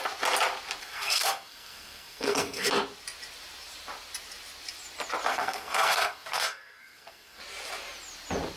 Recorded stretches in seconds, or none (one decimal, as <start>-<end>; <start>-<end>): 0.0-0.8; 2.8-5.3; 7.4-8.6